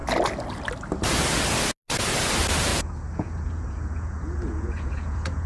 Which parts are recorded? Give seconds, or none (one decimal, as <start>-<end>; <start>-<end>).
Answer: 0.0-2.7